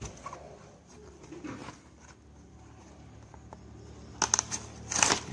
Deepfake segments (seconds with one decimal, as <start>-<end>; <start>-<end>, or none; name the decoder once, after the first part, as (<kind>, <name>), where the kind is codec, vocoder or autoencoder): none